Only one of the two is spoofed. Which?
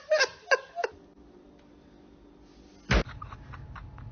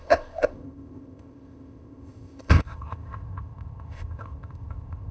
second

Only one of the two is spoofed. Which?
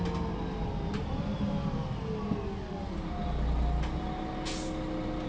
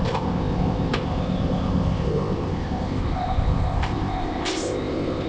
second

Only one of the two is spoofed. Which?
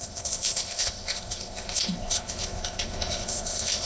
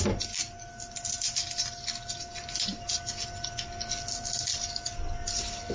first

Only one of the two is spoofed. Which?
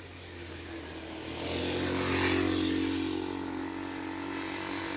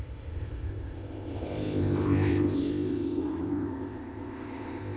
second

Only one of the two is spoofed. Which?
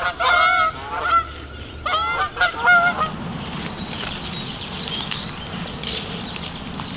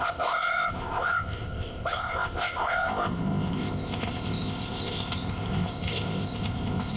second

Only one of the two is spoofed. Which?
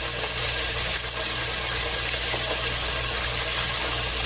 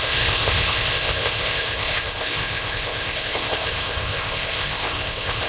second